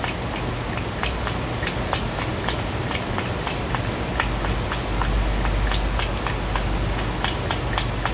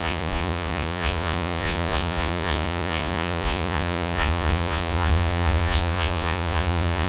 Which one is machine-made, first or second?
second